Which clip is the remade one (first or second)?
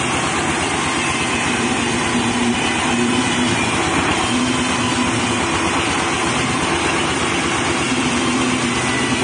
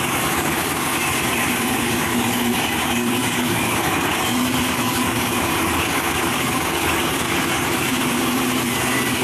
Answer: second